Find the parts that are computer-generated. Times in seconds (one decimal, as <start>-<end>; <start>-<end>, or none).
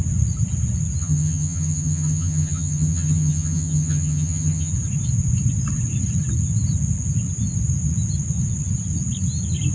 1.0-4.7